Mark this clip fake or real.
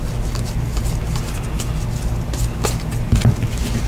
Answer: real